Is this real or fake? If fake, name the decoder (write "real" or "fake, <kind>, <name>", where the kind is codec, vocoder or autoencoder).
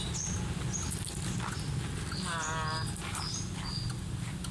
real